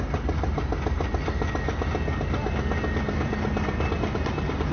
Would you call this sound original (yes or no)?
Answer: yes